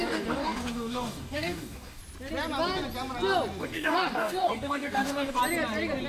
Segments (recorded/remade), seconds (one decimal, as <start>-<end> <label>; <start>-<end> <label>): 0.0-2.0 remade; 2.0-3.6 recorded; 3.6-5.4 remade; 5.4-6.1 recorded